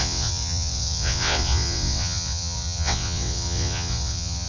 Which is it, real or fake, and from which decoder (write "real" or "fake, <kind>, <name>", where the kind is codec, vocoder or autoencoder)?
fake, vocoder, WaveNeXt